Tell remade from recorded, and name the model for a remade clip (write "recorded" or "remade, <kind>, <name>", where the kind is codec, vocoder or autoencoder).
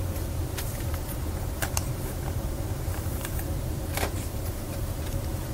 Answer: remade, vocoder, BigVGAN v2